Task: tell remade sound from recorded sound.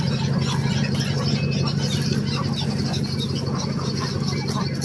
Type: recorded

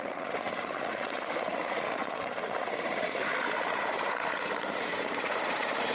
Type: remade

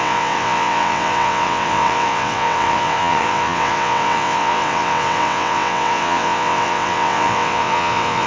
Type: remade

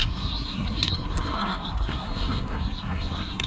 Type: remade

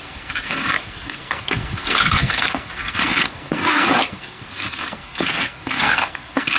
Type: remade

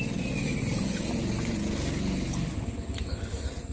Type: recorded